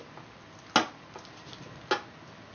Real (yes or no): yes